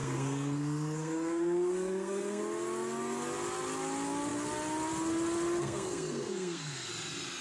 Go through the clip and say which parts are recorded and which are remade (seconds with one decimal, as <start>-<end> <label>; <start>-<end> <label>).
0.0-2.4 remade; 2.4-5.6 recorded; 5.6-6.9 remade; 6.9-7.4 recorded